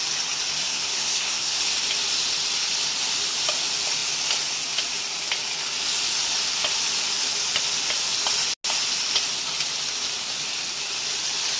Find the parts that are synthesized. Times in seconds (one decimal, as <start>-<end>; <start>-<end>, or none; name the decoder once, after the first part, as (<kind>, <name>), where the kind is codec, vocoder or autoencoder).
0.6-1.6 (codec, SNAC)